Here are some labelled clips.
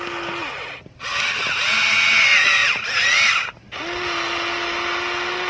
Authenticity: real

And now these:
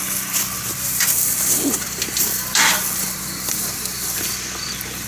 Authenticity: fake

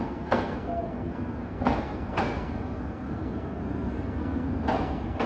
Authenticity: fake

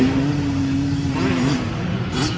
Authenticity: real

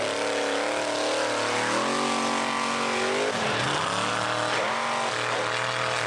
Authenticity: real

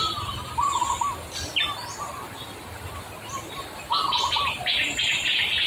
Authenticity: real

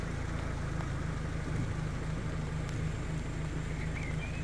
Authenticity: real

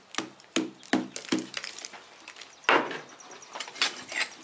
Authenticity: real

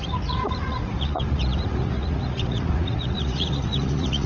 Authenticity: fake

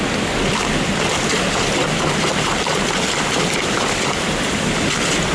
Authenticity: real